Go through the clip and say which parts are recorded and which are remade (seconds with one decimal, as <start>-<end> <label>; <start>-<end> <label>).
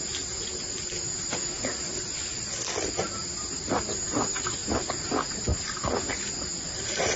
0.0-1.9 recorded; 1.9-2.9 remade; 2.9-7.2 recorded